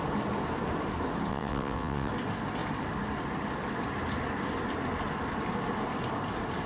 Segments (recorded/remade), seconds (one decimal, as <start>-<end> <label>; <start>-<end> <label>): 0.0-1.3 recorded; 1.3-2.1 remade; 2.1-6.7 recorded